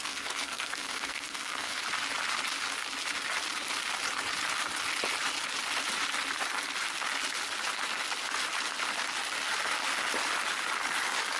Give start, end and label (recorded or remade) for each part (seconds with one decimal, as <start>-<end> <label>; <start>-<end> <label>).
0.0-1.8 remade; 1.8-11.4 recorded